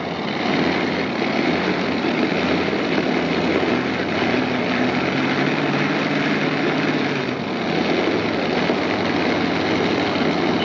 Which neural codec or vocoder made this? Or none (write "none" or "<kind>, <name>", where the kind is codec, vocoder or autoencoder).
none